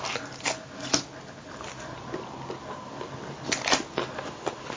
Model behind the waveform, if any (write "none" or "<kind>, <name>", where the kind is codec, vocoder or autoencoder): none